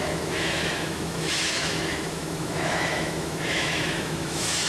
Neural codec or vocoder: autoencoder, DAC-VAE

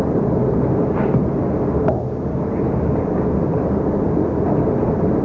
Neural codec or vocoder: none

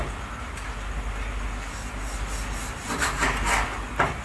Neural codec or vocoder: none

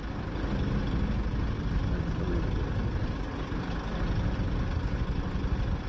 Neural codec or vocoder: none